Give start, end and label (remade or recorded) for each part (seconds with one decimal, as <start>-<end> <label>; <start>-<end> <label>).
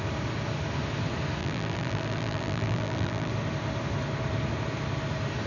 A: 0.0-1.4 recorded; 1.4-3.3 remade; 3.3-5.5 recorded